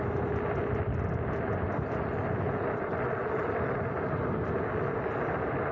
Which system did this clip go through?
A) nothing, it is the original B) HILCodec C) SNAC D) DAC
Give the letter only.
A